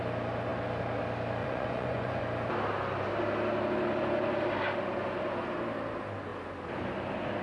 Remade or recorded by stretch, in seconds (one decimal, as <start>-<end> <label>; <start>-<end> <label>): 0.0-1.4 recorded; 1.4-2.2 remade; 2.2-7.4 recorded